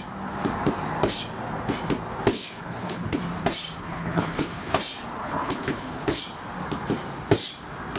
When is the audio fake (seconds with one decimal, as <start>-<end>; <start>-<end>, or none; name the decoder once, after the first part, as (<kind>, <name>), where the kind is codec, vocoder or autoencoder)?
2.3-3.2 (codec, HILCodec); 3.8-4.8; 5.2-6.2